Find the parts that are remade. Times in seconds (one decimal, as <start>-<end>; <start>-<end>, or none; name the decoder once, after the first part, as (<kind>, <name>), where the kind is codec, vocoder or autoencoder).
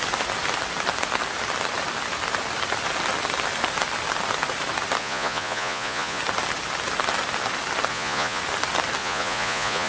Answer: 5.0-6.2 (vocoder, Vocos); 7.9-8.4; 9.0-9.9